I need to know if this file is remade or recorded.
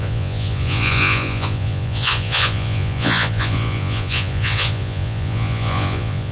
remade